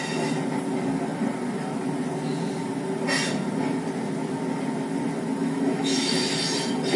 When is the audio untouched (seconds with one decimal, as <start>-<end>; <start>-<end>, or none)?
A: 0.0-5.4; 6.2-7.0